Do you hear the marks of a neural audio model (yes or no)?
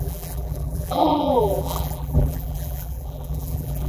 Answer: yes